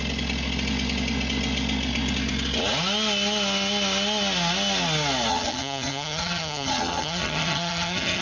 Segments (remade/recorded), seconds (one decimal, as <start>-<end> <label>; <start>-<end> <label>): 0.0-5.3 recorded; 5.3-8.2 remade